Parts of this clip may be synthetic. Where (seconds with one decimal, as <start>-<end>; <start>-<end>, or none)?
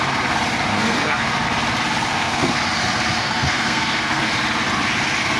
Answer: 0.7-1.3; 2.1-2.6; 3.2-4.3